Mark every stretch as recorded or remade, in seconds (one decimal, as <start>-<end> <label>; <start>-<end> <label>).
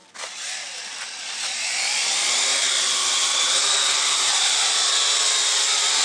0.0-6.0 recorded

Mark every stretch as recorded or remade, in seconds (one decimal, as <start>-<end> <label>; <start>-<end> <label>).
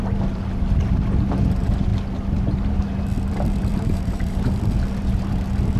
0.0-3.7 recorded; 3.7-4.6 remade; 4.6-5.8 recorded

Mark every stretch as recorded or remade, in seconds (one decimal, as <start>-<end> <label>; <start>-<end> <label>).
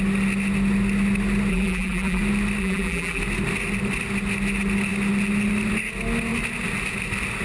0.0-1.5 recorded; 1.5-2.2 remade; 2.2-2.6 recorded; 2.6-3.2 remade; 3.2-7.4 recorded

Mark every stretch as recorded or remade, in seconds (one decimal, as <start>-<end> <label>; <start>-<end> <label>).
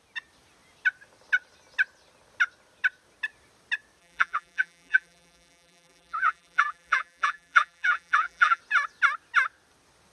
0.0-4.0 recorded; 4.0-8.6 remade; 8.6-10.1 recorded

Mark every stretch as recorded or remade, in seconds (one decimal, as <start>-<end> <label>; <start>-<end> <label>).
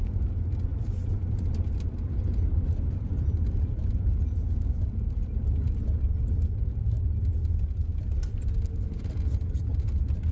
0.0-0.7 recorded; 0.7-4.5 remade; 4.5-5.6 recorded; 5.6-6.2 remade; 6.2-10.3 recorded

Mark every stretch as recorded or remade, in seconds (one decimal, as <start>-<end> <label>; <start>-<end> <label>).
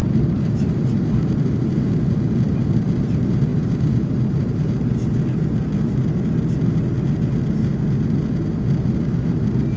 0.0-1.9 remade; 1.9-3.5 recorded; 3.5-4.8 remade; 4.8-9.8 recorded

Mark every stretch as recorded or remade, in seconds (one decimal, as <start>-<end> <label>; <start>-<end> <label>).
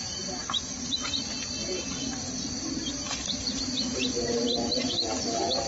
0.0-0.4 recorded; 0.4-1.2 remade; 1.2-3.0 recorded; 3.0-3.5 remade; 3.5-5.7 recorded